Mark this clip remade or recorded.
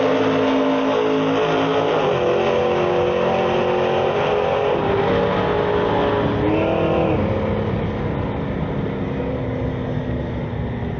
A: recorded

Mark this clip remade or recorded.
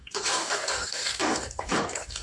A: remade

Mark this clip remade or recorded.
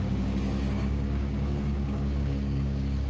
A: remade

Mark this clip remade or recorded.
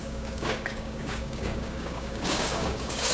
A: remade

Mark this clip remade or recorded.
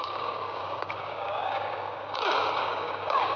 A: remade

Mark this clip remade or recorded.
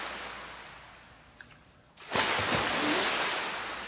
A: recorded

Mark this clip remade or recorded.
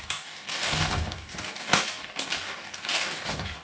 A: remade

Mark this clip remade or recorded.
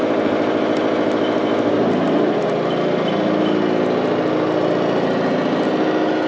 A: recorded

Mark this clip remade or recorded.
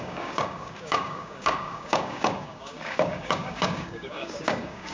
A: remade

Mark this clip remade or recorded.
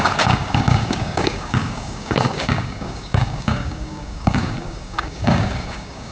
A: remade